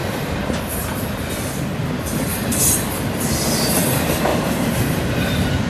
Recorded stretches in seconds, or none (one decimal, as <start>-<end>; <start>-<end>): 0.5-4.3; 5.1-5.7